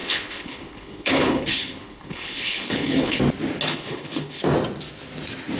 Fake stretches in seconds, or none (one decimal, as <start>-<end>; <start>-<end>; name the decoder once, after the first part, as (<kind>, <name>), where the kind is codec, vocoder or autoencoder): 0.0-3.2 (codec, HILCodec); 3.7-4.4